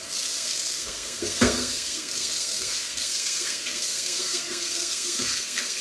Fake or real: fake